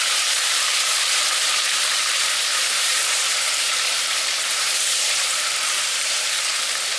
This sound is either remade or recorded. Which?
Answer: remade